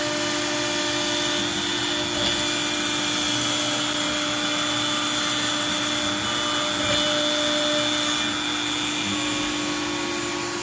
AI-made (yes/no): no